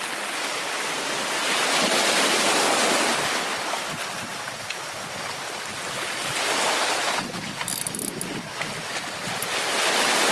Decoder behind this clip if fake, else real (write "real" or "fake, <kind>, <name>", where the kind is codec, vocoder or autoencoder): real